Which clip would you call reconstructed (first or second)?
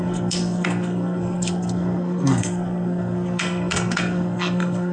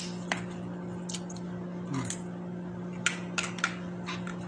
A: first